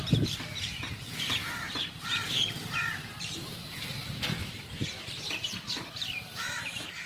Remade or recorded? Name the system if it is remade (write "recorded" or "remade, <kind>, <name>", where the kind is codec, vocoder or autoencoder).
remade, vocoder, BigVGAN v2